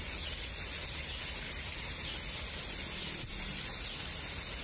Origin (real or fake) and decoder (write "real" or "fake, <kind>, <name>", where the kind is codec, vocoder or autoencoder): real